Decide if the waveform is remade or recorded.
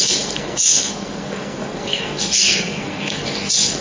remade